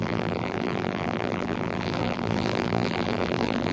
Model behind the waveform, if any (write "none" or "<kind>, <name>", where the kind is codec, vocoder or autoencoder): vocoder, BigVGAN v2